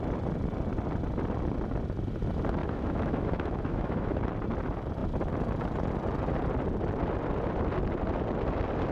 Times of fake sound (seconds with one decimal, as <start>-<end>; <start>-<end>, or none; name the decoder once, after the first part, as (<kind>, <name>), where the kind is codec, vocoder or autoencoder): 2.6-4.2 (autoencoder, DAC-VAE)